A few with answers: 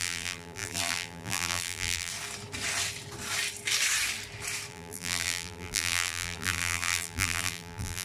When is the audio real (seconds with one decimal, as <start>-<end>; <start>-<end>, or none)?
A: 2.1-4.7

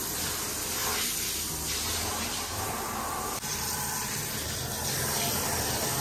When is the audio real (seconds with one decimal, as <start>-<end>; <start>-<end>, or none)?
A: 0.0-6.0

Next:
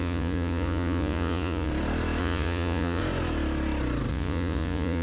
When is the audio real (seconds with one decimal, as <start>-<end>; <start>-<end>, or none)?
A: 1.7-2.2; 3.0-4.1